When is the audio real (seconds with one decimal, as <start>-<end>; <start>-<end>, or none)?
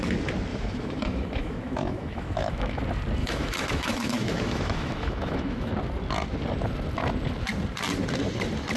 0.0-0.5; 2.8-3.2; 5.7-8.8